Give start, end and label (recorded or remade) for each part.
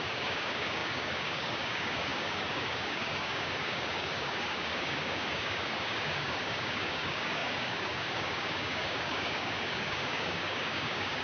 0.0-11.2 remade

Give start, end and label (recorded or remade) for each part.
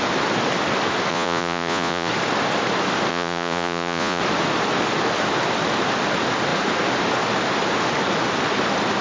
0.0-1.1 recorded; 1.1-2.1 remade; 2.1-3.1 recorded; 3.1-4.2 remade; 4.2-9.0 recorded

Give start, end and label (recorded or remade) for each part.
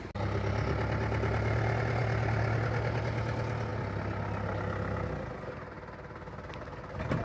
0.0-7.2 recorded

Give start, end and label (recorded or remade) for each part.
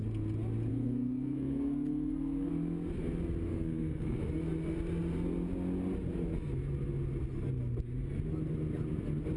0.0-0.7 recorded; 0.7-2.5 remade; 2.5-3.5 recorded; 3.5-4.2 remade; 4.2-9.4 recorded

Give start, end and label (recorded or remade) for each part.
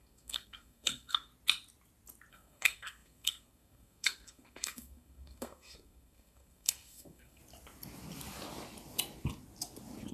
0.0-1.3 remade; 1.3-2.3 recorded; 2.3-7.4 remade; 7.4-10.1 recorded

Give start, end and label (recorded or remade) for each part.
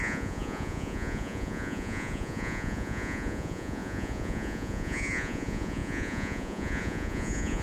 0.0-7.6 remade